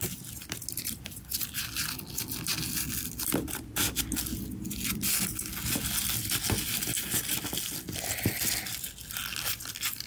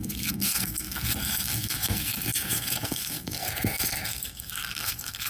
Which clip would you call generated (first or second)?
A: second